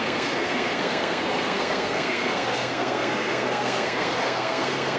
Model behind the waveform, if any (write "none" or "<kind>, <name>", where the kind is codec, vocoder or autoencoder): codec, SNAC